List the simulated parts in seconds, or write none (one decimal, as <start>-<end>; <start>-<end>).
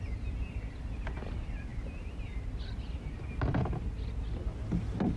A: 1.7-3.1